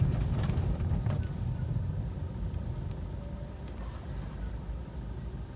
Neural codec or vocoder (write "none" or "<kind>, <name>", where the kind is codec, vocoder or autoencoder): none